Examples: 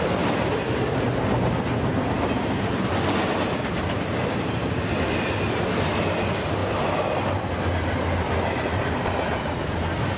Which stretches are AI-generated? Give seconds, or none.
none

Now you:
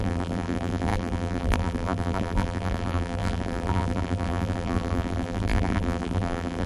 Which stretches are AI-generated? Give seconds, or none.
0.0-6.7

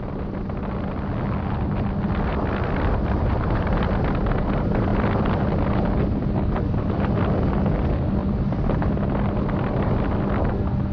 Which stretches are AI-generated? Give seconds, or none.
2.3-3.9; 4.9-7.5; 8.2-8.9